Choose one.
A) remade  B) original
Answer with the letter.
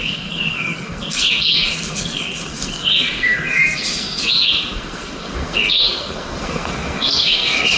A